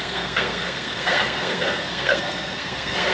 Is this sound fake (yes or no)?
yes